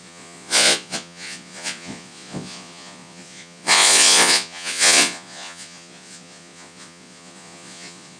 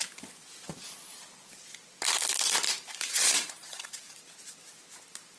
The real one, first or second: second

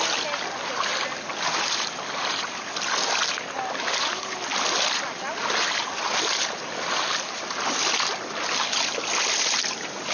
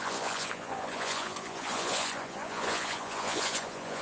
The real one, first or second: first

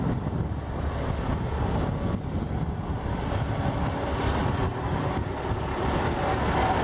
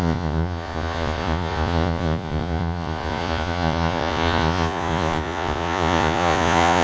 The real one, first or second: first